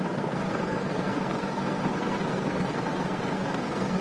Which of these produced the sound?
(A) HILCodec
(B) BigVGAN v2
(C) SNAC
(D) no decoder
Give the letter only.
C